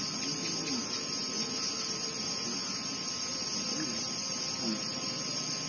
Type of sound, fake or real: real